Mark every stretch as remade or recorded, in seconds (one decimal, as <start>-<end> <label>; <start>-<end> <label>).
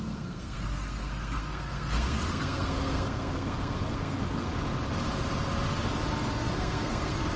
0.0-4.5 remade; 4.5-6.3 recorded; 6.3-7.4 remade